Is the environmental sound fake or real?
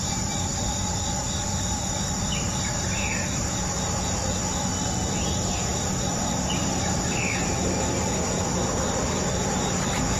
real